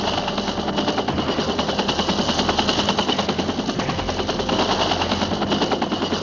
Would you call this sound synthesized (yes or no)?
no